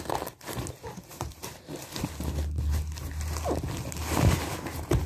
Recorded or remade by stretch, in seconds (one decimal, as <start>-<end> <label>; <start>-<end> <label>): 0.0-1.1 recorded; 1.1-2.0 remade; 2.0-5.1 recorded

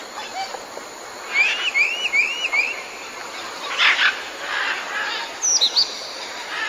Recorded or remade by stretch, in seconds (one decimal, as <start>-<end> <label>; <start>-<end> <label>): 0.0-3.2 recorded; 3.2-3.8 remade; 3.8-6.7 recorded

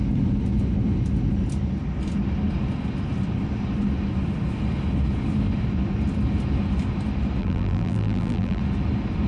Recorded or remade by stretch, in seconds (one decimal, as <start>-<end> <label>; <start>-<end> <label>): 0.0-7.4 recorded; 7.4-8.6 remade; 8.6-9.3 recorded